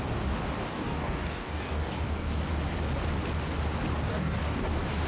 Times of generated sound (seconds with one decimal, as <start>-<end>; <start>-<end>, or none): 0.7-2.4; 4.1-4.6